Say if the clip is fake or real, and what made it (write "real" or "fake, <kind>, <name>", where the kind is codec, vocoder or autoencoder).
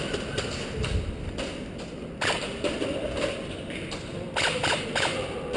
real